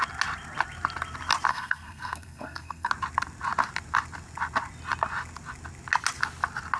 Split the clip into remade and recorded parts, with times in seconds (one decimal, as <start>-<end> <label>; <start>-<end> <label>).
0.0-1.5 recorded; 1.5-2.9 remade; 2.9-6.8 recorded